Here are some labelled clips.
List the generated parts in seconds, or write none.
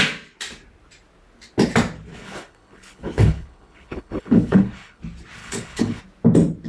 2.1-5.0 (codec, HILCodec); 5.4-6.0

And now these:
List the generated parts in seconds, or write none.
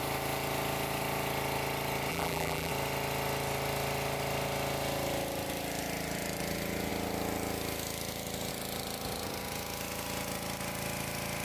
2.1-2.7 (vocoder, BigVGAN v2)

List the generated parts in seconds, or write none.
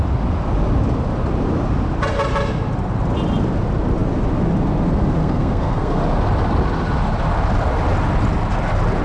5.2-6.0 (codec, SNAC)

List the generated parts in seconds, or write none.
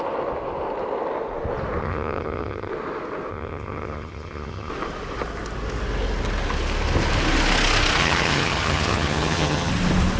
1.8-2.7 (vocoder, HiFi-GAN); 3.3-4.7; 8.0-9.7